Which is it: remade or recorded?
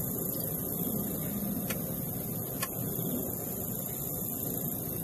recorded